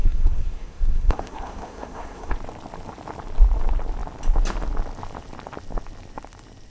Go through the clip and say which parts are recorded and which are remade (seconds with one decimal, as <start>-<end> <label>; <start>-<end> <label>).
0.0-2.3 remade; 2.3-6.7 recorded